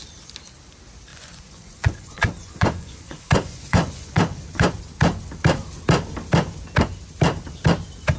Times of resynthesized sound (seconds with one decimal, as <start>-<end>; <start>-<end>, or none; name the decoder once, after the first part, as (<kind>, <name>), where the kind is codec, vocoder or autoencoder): 1.1-4.8 (vocoder, Vocos)